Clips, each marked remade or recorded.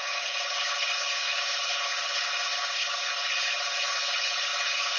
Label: remade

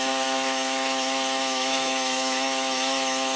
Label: remade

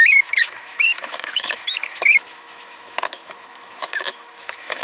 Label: remade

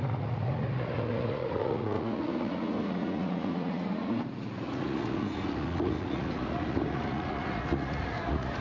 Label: remade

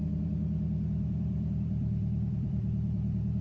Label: remade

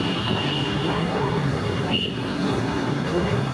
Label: remade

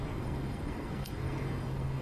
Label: remade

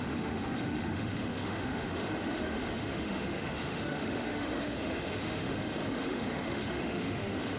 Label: remade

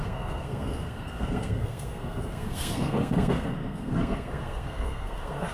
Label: remade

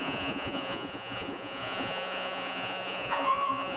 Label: remade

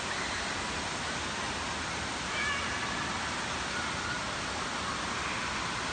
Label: recorded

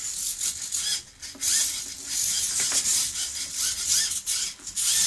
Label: recorded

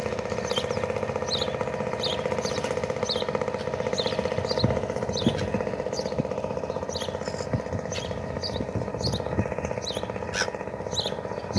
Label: recorded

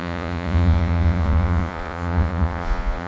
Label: remade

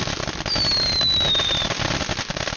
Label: recorded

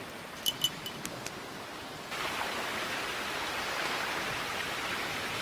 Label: recorded